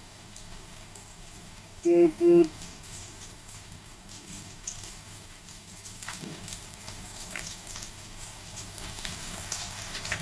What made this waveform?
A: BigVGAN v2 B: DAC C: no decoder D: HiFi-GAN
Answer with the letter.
B